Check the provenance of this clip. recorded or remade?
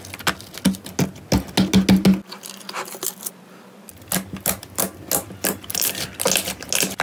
recorded